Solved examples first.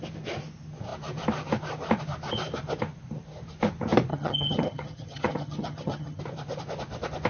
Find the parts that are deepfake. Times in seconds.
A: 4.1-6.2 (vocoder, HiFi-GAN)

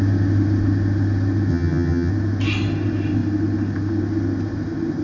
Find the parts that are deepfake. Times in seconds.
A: 1.5-2.1 (vocoder, HiFi-GAN)

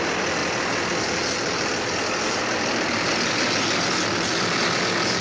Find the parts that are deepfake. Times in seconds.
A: none

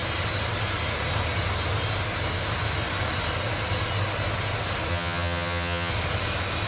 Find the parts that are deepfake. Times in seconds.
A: 4.9-5.9 (vocoder, HiFi-GAN)

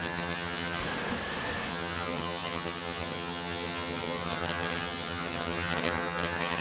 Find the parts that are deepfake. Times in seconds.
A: 0.0-0.8 (vocoder, HiFi-GAN); 1.7-6.6

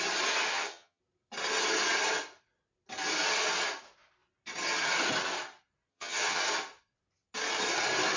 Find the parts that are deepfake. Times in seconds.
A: 0.5-1.0 (vocoder, HiFi-GAN); 5.9-6.4